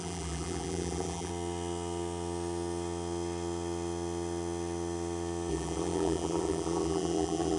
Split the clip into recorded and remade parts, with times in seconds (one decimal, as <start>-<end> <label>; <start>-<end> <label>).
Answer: 0.0-1.3 remade; 1.3-5.5 recorded; 5.5-7.6 remade